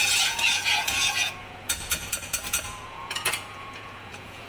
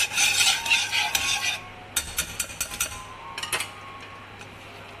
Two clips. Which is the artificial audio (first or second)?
first